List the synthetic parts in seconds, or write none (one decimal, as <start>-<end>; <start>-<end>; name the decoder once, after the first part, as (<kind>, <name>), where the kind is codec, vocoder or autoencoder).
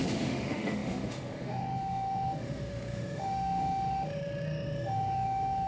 0.0-5.7 (autoencoder, DAC-VAE)